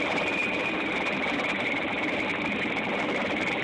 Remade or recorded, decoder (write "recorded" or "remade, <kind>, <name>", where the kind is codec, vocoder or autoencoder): remade, vocoder, BigVGAN v2